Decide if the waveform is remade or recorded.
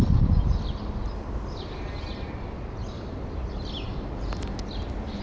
recorded